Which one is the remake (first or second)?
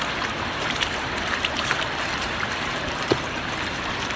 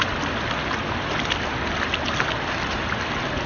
first